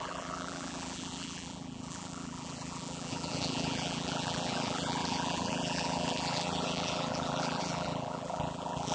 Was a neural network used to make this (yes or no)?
yes